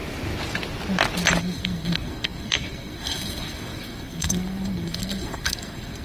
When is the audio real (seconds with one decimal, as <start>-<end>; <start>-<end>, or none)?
0.0-1.4